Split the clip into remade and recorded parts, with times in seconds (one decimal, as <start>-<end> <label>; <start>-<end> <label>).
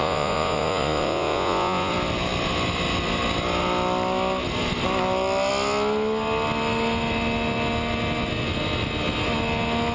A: 0.0-1.9 remade; 1.9-9.9 recorded